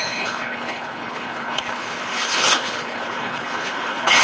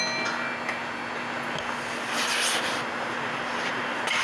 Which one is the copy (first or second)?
first